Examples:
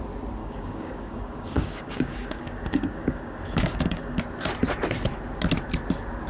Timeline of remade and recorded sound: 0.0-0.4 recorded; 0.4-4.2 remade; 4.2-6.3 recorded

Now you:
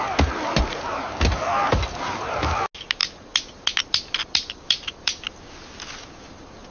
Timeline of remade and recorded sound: 0.0-6.7 recorded

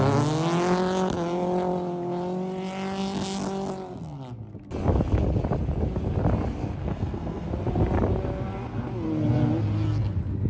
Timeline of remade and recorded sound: 0.0-6.8 recorded; 6.8-7.5 remade; 7.5-10.5 recorded